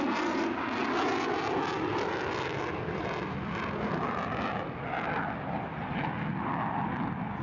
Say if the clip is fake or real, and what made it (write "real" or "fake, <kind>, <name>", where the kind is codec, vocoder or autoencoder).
real